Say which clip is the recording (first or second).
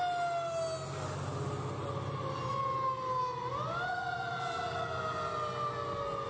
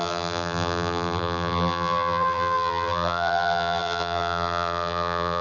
first